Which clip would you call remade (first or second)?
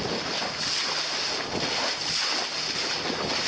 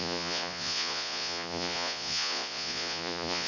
second